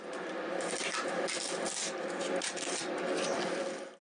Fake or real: real